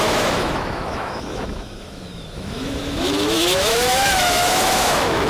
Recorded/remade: remade